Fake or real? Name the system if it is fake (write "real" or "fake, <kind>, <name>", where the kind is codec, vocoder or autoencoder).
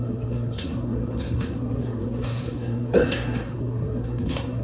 fake, codec, SNAC